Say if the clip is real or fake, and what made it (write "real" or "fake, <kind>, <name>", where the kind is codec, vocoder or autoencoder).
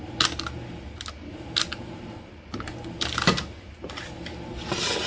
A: real